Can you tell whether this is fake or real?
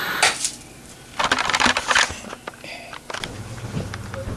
real